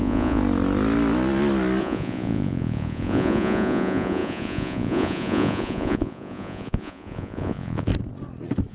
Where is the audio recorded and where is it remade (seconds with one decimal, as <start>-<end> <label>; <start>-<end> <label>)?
0.0-0.4 remade; 0.4-1.8 recorded; 1.8-7.9 remade; 7.9-8.7 recorded